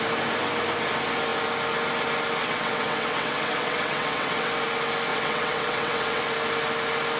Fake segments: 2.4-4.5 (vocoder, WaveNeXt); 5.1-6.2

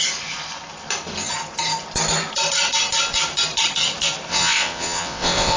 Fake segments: 4.3-5.6 (vocoder, WaveNeXt)

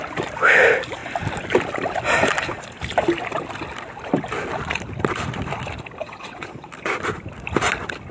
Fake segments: 6.0-6.7 (vocoder, WaveNeXt)